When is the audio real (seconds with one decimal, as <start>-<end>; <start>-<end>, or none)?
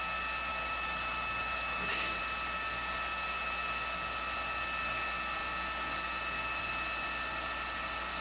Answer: 0.0-0.5; 2.2-8.2